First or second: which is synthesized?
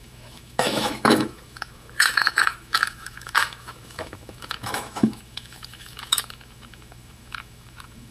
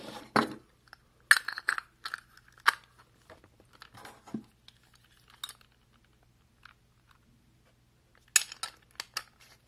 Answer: first